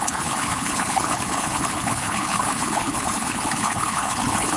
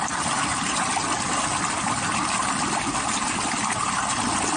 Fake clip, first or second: first